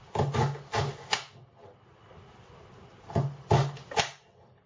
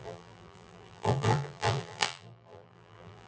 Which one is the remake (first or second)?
second